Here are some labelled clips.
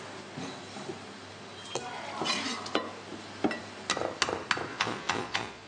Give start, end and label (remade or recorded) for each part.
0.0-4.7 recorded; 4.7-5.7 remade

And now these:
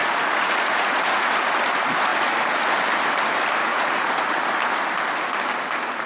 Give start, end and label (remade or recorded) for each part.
0.0-1.4 remade; 1.4-3.7 recorded; 3.7-4.3 remade; 4.3-6.1 recorded